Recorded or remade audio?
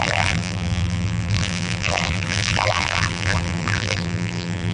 remade